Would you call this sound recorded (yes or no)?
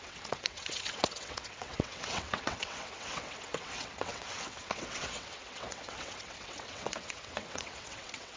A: no